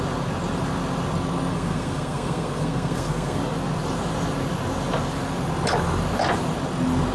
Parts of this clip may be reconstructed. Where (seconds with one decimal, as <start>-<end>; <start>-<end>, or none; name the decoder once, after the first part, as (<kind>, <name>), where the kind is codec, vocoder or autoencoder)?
1.5-3.4 (codec, SNAC)